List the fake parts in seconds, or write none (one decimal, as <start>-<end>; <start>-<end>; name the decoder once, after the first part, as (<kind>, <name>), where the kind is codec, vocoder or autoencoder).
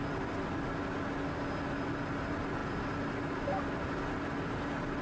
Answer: none